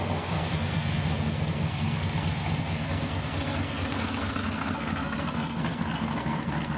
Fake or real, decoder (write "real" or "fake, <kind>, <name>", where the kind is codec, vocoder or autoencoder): fake, codec, SNAC